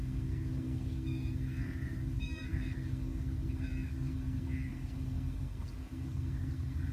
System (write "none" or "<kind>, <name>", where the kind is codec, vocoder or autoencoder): codec, SNAC